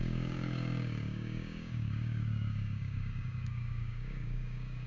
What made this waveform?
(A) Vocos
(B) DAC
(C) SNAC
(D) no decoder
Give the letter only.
B